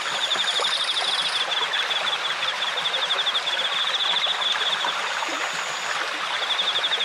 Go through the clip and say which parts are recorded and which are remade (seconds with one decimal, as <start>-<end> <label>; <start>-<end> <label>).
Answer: 0.0-1.2 remade; 1.2-5.4 recorded; 5.4-7.0 remade